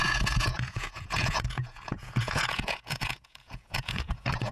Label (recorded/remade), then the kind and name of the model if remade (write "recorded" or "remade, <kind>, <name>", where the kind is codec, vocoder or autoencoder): remade, vocoder, Vocos